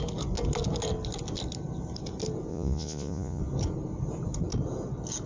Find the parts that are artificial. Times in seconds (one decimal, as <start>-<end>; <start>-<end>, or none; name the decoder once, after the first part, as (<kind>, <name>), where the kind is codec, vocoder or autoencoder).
2.5-3.4 (vocoder, Vocos)